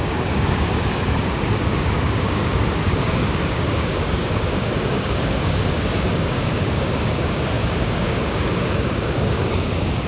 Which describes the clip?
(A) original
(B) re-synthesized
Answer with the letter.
B